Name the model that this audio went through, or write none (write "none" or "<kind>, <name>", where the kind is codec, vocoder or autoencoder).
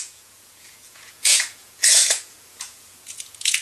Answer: vocoder, Vocos